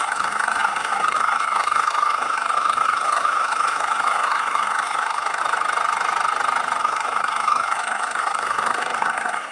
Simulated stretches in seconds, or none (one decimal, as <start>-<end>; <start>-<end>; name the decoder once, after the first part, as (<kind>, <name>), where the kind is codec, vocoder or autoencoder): 0.0-5.4 (codec, SNAC); 6.8-9.5